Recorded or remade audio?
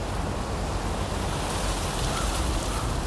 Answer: recorded